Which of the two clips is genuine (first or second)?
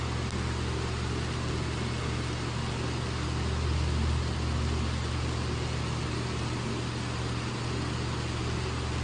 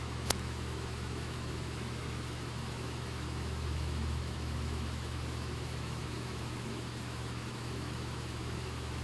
first